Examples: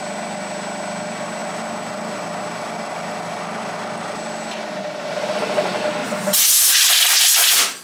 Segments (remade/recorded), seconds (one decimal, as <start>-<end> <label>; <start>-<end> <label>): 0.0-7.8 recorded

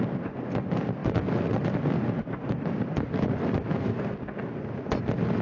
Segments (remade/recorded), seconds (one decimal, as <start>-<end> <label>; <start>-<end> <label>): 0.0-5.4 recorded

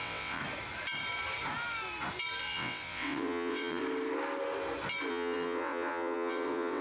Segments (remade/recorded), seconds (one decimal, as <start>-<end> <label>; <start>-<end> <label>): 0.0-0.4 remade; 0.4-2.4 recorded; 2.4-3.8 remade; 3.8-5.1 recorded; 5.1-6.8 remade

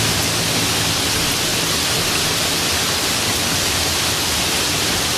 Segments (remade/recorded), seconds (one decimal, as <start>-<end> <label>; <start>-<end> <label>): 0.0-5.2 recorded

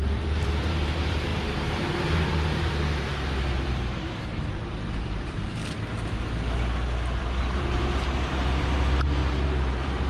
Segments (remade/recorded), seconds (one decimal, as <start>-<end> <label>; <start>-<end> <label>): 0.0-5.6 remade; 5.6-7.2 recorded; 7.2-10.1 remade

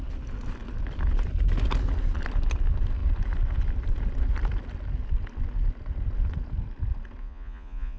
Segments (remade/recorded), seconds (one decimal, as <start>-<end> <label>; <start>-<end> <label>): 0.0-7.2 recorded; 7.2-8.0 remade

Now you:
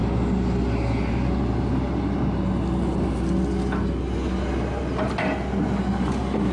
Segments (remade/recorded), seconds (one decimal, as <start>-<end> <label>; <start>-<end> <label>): 0.0-6.5 recorded